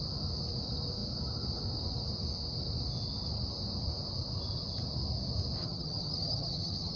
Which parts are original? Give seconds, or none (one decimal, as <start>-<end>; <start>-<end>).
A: 0.0-5.6